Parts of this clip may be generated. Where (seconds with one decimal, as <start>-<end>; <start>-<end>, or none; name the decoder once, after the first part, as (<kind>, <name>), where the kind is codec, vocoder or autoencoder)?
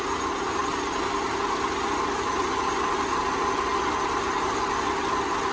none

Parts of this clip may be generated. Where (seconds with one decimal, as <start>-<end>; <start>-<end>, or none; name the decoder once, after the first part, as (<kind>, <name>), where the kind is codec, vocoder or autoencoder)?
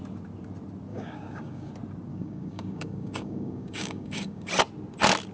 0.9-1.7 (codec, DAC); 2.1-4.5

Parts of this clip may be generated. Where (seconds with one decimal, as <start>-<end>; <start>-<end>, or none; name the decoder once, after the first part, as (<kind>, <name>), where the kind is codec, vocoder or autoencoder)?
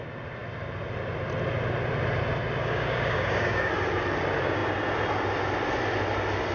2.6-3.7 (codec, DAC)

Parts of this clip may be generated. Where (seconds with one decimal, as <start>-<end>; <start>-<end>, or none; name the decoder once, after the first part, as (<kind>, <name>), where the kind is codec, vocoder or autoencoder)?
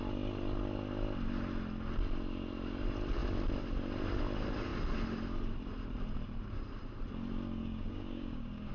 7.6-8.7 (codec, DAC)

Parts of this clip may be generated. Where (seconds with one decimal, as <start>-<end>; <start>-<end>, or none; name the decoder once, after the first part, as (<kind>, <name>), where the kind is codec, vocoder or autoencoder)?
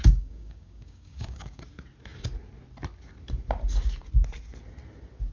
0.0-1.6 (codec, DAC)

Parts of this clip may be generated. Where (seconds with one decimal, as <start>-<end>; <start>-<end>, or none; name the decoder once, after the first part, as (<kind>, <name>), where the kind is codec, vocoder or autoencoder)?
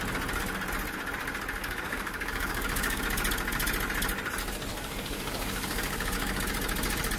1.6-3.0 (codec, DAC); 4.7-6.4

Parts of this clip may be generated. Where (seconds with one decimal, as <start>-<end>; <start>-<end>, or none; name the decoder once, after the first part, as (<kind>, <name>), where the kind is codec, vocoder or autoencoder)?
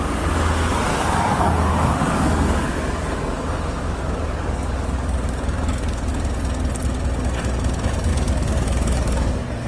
0.9-6.1 (codec, DAC); 8.1-9.7